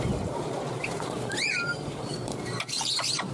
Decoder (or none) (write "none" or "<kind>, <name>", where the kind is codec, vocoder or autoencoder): vocoder, BigVGAN v2